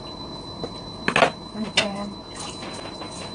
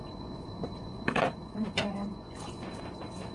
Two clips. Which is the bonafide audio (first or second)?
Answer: first